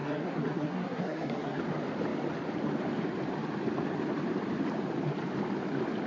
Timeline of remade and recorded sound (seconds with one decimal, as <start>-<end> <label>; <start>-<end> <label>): 0.0-1.6 remade; 1.6-6.1 recorded

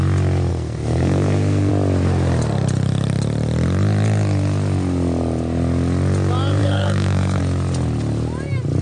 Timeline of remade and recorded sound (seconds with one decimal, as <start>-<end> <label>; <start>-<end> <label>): 0.0-0.5 recorded; 0.5-1.7 remade; 1.7-6.6 recorded; 6.6-7.4 remade; 7.4-8.8 recorded

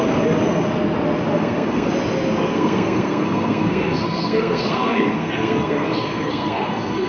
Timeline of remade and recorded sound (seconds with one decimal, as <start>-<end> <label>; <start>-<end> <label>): 0.0-1.3 recorded; 1.3-1.9 remade; 1.9-2.5 recorded; 2.5-7.1 remade

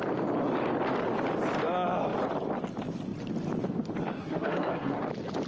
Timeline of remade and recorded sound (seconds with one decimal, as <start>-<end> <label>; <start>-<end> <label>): 0.0-4.2 recorded; 4.2-5.0 remade; 5.0-5.5 recorded

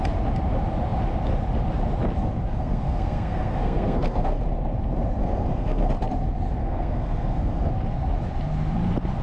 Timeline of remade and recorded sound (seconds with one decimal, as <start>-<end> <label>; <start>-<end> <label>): 0.0-2.5 recorded; 2.5-4.4 remade; 4.4-5.2 recorded; 5.2-5.9 remade; 5.9-6.6 recorded; 6.6-7.7 remade; 7.7-9.2 recorded

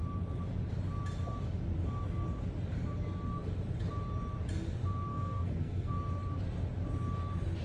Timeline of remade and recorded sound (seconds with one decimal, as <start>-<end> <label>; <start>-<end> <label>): 0.0-5.1 recorded; 5.1-5.9 remade; 5.9-7.6 recorded

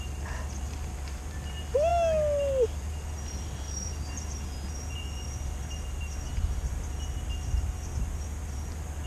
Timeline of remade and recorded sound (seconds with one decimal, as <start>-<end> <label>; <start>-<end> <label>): 0.0-9.1 recorded